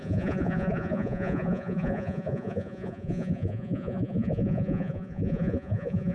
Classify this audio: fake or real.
fake